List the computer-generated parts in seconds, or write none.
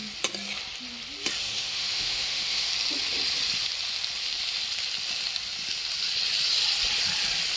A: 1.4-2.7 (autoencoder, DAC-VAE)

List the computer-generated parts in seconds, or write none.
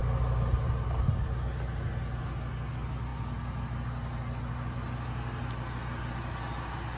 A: none